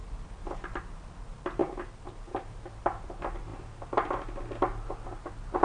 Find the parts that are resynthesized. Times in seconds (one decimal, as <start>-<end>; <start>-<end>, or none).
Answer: none